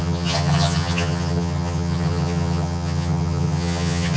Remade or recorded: remade